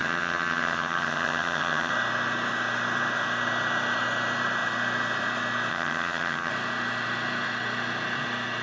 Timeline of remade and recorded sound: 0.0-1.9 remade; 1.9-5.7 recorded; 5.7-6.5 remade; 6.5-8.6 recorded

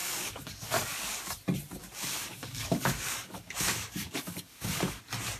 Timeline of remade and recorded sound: 0.0-1.3 remade; 1.3-1.8 recorded; 1.8-5.0 remade; 5.0-5.4 recorded